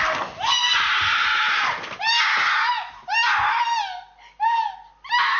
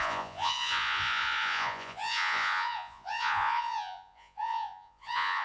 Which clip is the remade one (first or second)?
second